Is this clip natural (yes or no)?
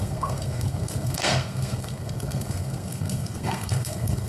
no